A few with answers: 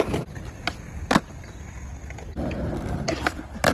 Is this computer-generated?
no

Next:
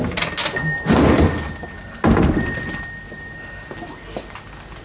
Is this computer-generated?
no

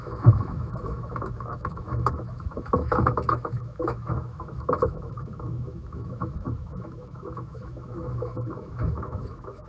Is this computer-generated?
yes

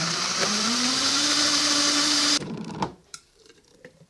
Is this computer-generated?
yes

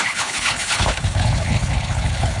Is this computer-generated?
yes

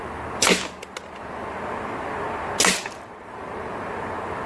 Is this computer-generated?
no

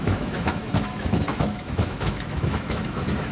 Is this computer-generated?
yes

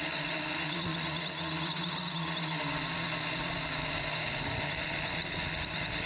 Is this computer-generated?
no